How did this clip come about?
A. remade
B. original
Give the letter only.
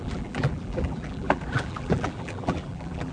A